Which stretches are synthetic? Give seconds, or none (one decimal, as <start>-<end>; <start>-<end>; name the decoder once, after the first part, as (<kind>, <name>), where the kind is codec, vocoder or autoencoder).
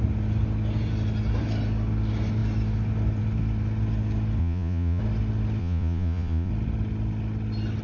4.4-5.0 (vocoder, Vocos); 5.6-6.5